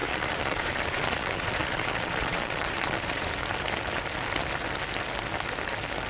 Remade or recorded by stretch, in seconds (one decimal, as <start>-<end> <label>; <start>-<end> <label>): 0.0-3.3 remade; 3.3-6.1 recorded